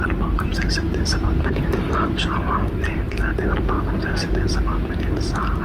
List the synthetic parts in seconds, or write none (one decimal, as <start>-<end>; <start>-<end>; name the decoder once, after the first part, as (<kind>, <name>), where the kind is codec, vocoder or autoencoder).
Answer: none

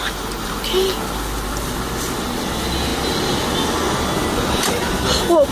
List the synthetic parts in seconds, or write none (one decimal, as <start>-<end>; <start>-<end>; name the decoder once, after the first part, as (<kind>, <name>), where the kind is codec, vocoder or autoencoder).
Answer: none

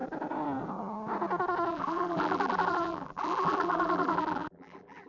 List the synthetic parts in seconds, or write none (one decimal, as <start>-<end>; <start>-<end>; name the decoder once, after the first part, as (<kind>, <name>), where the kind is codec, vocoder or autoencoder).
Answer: 1.7-5.1 (vocoder, BigVGAN v2)

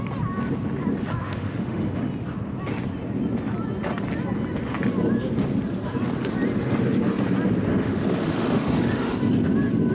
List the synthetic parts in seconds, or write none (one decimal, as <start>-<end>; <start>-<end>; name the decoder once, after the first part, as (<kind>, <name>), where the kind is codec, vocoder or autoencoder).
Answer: 1.2-2.0 (autoencoder, DAC-VAE); 7.7-9.1

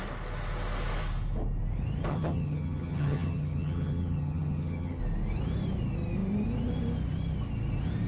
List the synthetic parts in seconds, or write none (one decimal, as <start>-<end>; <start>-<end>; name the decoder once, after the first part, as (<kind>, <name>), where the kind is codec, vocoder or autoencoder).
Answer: 2.1-5.0 (vocoder, HiFi-GAN)